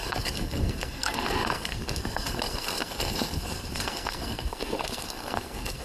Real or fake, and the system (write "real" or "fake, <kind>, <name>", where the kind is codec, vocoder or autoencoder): fake, codec, SNAC